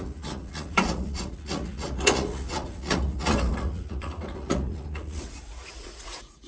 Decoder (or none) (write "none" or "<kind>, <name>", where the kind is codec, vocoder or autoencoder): vocoder, Vocos